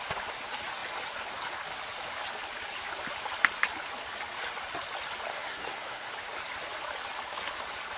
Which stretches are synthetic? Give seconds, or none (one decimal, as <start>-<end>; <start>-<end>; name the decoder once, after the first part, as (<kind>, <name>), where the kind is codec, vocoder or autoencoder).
5.3-6.1 (codec, SNAC)